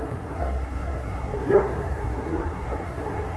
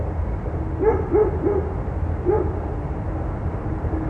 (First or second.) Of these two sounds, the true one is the second